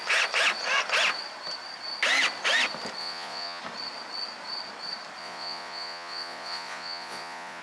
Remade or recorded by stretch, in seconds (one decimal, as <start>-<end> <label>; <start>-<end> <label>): 0.0-3.0 recorded; 3.0-3.6 remade; 3.6-5.2 recorded; 5.2-7.6 remade